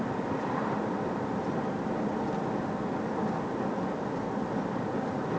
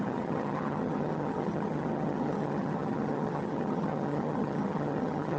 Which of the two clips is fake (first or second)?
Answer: second